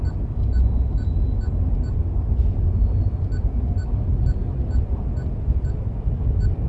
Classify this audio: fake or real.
real